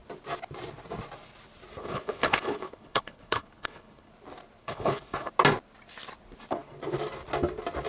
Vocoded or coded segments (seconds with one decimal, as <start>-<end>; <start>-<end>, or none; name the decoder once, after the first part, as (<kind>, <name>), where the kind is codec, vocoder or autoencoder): 1.8-4.1 (codec, HILCodec); 4.6-5.3